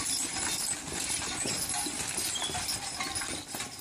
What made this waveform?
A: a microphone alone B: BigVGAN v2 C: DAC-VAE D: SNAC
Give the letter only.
A